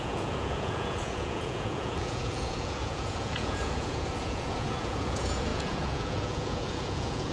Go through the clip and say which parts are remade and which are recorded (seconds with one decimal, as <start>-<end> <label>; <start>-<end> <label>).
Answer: 0.0-7.3 remade